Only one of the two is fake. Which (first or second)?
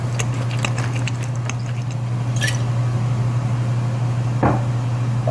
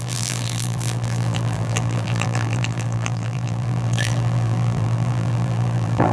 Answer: second